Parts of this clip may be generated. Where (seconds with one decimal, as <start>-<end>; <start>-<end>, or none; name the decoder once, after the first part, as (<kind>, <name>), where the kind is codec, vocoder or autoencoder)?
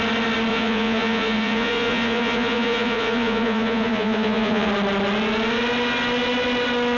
0.5-4.7 (vocoder, Vocos)